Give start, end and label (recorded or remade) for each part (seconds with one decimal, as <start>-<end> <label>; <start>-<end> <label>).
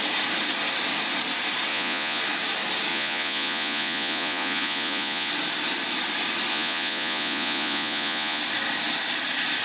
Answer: 0.0-1.7 recorded; 1.7-2.2 remade; 2.2-2.9 recorded; 2.9-5.3 remade; 5.3-6.5 recorded; 6.5-8.4 remade; 8.4-9.6 recorded